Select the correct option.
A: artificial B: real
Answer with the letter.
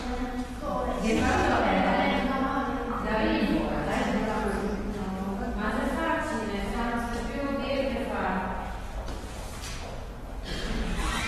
B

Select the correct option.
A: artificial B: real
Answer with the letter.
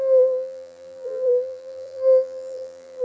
A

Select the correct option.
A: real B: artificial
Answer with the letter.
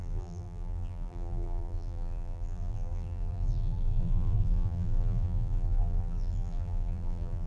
B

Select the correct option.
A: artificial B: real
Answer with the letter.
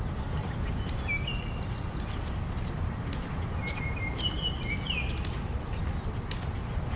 B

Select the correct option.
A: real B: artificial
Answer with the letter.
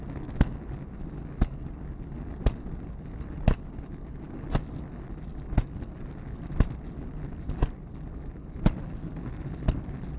A